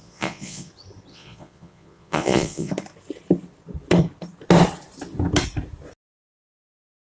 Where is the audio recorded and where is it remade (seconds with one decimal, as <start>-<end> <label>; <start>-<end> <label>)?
0.0-0.7 remade; 0.7-1.1 recorded; 1.1-2.7 remade; 2.7-7.1 recorded